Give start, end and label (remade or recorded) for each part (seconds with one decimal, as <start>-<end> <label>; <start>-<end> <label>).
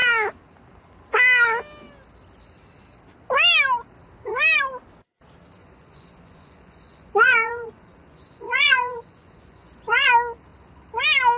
0.0-5.6 recorded; 5.6-10.1 remade; 10.1-11.4 recorded